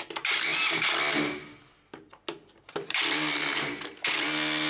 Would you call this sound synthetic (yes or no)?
no